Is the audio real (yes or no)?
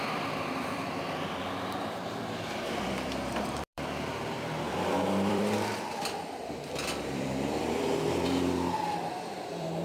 no